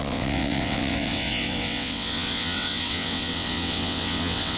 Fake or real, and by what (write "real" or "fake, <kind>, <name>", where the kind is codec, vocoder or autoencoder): fake, vocoder, WaveNeXt